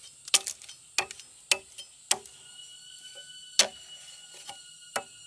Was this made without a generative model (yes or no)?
yes